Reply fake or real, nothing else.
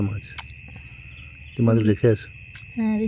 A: real